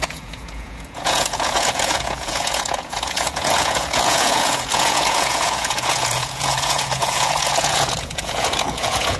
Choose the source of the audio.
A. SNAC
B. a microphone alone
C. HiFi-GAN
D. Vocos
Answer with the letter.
D